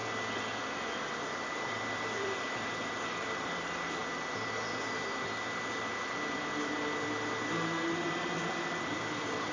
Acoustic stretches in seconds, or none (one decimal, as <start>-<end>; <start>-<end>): 0.0-0.6; 4.0-8.1